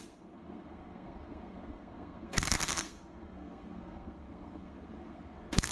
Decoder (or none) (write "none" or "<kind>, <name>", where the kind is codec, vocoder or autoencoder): codec, SNAC